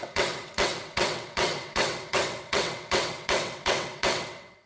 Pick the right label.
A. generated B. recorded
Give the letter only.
A